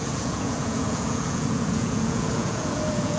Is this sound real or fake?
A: fake